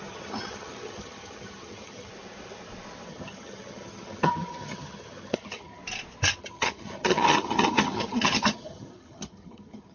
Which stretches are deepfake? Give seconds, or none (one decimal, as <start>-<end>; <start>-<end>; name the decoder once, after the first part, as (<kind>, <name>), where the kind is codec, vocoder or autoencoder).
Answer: 0.0-2.1 (vocoder, HiFi-GAN); 3.1-5.8; 6.4-9.9